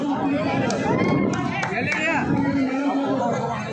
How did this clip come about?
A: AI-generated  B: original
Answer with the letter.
B